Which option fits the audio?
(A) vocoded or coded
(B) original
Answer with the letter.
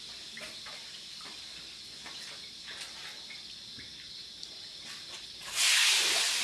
B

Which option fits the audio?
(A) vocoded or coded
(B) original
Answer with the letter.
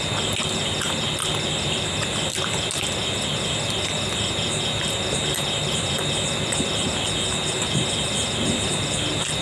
B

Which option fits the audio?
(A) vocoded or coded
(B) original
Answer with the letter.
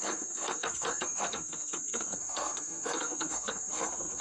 A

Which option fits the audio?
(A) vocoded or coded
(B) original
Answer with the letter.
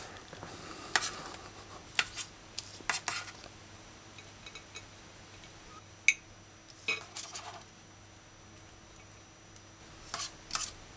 B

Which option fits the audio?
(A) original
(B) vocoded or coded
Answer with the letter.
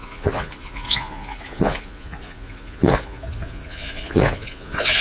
B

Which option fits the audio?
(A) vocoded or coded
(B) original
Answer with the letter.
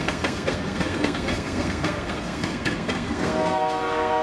A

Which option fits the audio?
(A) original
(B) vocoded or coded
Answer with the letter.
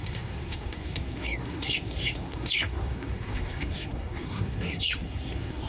B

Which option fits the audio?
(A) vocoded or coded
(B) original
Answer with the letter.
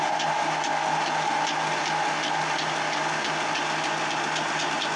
B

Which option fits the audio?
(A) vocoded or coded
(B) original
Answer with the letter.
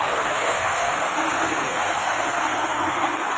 A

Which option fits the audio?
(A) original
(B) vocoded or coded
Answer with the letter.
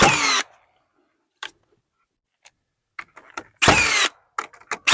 A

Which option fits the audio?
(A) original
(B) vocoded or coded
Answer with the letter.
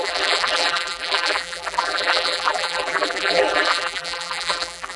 B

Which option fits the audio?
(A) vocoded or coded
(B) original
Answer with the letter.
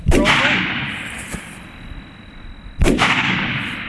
B